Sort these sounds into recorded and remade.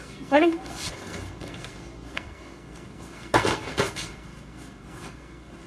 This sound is remade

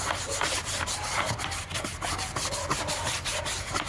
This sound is recorded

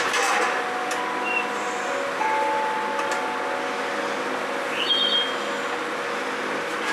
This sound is recorded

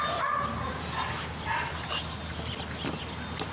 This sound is recorded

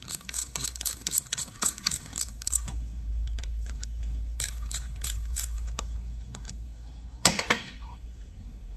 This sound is remade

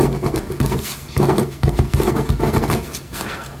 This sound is remade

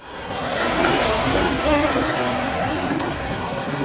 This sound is remade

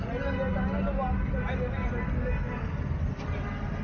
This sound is recorded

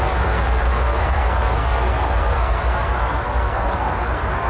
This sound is remade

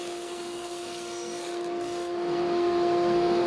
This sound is remade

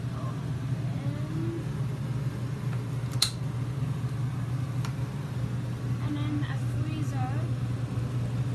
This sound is recorded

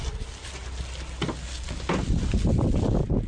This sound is recorded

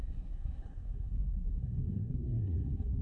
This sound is remade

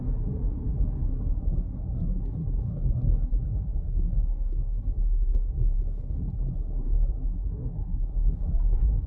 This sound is remade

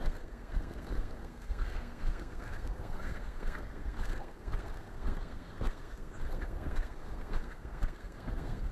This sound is remade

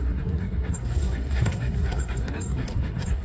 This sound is remade